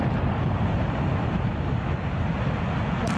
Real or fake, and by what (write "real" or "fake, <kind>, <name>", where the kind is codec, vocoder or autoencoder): real